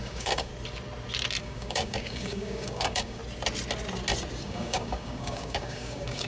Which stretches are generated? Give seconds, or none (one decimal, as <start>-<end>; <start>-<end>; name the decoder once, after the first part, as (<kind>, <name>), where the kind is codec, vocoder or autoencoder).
0.0-0.5 (codec, DAC); 1.4-3.2; 4.4-6.3